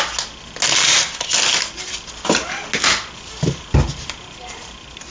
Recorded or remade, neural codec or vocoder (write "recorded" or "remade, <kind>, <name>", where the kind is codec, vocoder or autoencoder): recorded